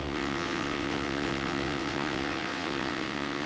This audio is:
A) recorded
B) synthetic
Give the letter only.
B